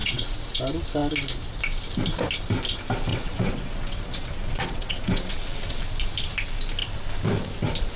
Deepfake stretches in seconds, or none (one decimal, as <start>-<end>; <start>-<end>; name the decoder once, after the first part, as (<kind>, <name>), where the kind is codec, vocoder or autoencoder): 0.0-0.6 (vocoder, WaveNeXt); 3.1-5.8